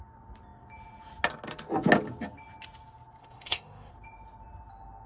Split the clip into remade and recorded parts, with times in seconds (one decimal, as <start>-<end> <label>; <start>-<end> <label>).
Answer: 0.0-3.2 recorded; 3.2-3.9 remade; 3.9-5.1 recorded

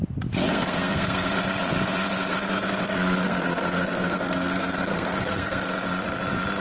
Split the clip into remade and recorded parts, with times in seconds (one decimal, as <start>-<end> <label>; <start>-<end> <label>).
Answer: 0.0-0.5 recorded; 0.5-1.3 remade; 1.3-2.3 recorded; 2.3-5.7 remade; 5.7-6.6 recorded

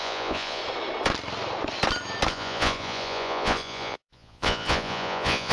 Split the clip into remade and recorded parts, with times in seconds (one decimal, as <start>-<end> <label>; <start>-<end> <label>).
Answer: 0.0-0.6 remade; 0.6-2.3 recorded; 2.3-5.5 remade

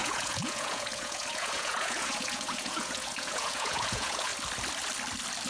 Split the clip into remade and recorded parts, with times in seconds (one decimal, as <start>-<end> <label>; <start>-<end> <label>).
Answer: 0.0-4.3 remade; 4.3-5.5 recorded

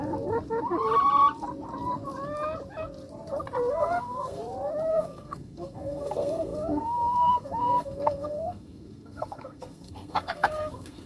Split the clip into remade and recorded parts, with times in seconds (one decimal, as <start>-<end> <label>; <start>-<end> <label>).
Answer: 0.0-3.7 recorded; 3.7-4.4 remade; 4.4-4.9 recorded; 4.9-11.1 remade